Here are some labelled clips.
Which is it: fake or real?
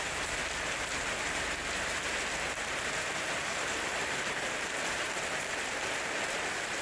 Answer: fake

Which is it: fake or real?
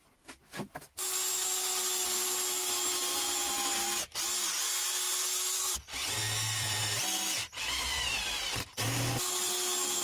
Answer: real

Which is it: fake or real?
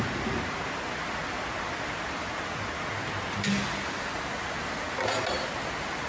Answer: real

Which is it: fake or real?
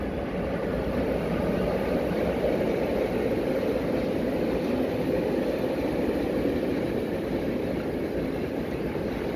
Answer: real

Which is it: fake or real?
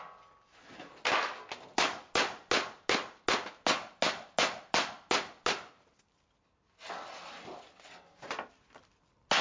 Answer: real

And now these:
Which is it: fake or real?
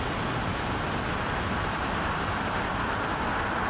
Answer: fake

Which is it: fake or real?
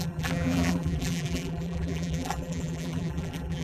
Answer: fake